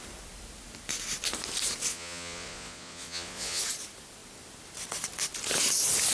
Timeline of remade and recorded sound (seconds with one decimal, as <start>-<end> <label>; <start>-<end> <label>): 0.0-1.9 recorded; 1.9-3.6 remade; 3.6-6.1 recorded